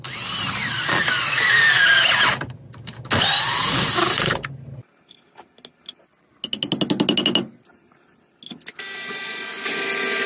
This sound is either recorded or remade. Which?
recorded